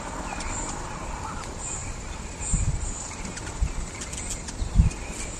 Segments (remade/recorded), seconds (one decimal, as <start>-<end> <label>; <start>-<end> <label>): 0.0-5.4 recorded